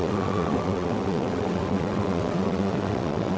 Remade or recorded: remade